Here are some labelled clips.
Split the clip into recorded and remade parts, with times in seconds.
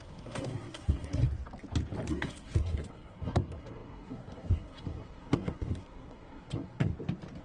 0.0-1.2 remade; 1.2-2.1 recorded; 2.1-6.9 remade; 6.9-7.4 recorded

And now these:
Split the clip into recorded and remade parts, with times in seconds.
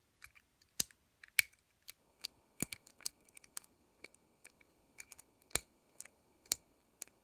0.0-2.0 recorded; 2.0-7.2 remade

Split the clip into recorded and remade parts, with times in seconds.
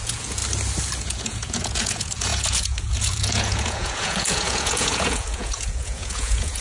0.0-0.4 remade; 0.4-1.0 recorded; 1.0-6.6 remade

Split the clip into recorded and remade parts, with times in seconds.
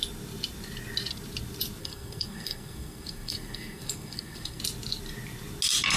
0.0-1.8 recorded; 1.8-4.6 remade; 4.6-6.0 recorded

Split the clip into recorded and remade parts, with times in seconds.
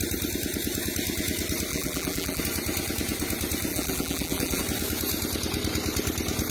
0.0-1.7 recorded; 1.7-2.4 remade; 2.4-3.7 recorded; 3.7-4.6 remade; 4.6-6.5 recorded